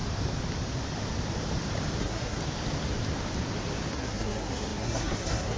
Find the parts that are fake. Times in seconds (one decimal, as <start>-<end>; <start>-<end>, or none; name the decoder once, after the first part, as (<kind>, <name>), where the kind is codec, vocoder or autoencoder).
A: 2.0-2.4 (codec, SNAC); 3.9-5.6